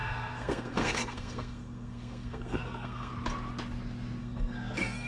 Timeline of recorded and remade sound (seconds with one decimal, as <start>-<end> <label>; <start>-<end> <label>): 0.0-3.1 remade; 3.1-4.2 recorded; 4.2-5.1 remade